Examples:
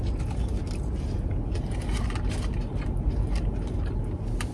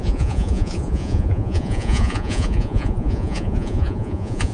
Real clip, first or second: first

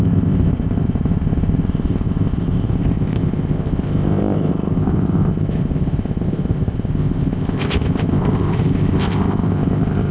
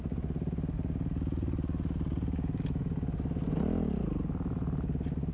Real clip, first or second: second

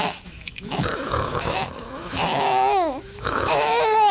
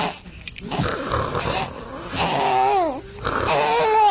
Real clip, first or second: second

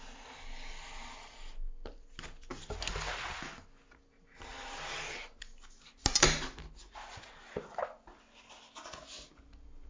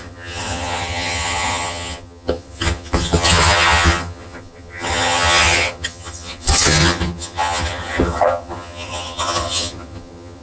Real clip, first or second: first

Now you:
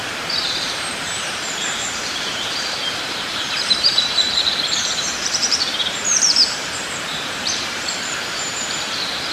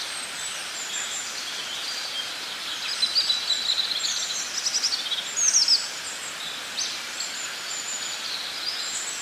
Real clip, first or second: second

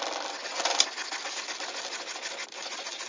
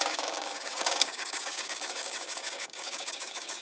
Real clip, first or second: first